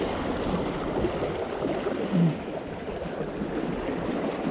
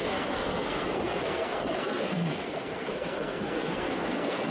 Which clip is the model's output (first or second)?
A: second